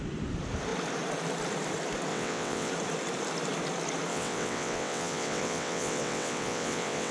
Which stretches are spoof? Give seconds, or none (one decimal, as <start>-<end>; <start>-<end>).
2.1-2.7; 4.1-7.1